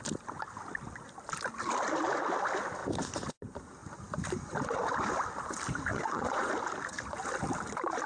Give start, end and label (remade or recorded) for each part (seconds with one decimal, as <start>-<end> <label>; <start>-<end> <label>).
0.0-5.9 recorded; 5.9-6.5 remade; 6.5-8.1 recorded